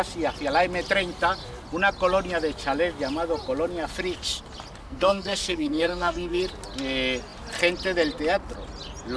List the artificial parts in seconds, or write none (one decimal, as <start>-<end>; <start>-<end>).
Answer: 4.8-6.4